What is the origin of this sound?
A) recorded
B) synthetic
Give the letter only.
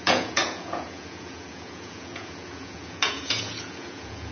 B